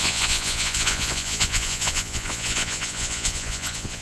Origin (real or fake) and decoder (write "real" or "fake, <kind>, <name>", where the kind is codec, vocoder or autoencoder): fake, vocoder, Vocos